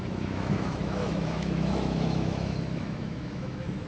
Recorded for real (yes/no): no